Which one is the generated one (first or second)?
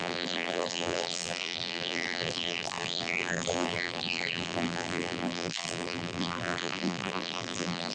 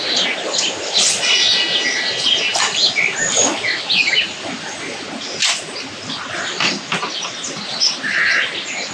first